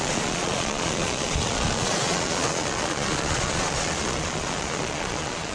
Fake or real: fake